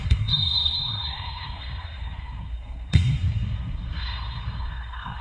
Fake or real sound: fake